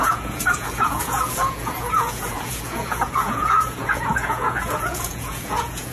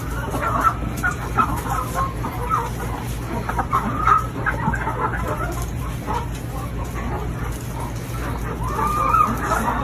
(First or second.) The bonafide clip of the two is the second